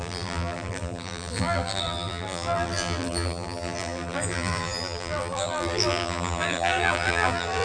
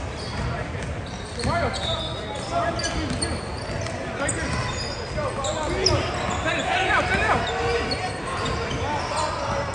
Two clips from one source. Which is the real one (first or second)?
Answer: second